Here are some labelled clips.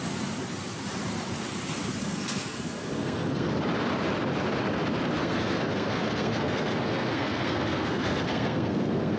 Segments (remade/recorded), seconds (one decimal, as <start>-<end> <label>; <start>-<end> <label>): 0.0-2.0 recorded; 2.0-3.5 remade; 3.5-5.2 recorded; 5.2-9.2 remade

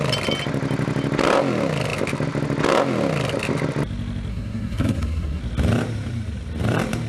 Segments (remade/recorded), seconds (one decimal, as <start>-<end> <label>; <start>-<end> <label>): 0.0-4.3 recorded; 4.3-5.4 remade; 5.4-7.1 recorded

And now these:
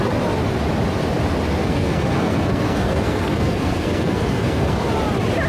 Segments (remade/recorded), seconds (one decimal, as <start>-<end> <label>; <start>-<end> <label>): 0.0-1.6 recorded; 1.6-4.9 remade; 4.9-5.5 recorded

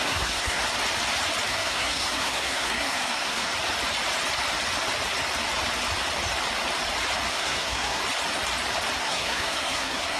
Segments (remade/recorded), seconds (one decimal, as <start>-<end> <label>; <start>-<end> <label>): 0.0-0.6 remade; 0.6-1.5 recorded; 1.5-3.5 remade; 3.5-7.3 recorded; 7.3-8.0 remade; 8.0-9.0 recorded; 9.0-10.2 remade

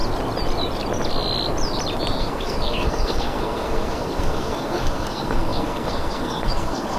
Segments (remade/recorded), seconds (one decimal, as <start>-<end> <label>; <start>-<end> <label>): 0.0-2.2 recorded; 2.2-7.0 remade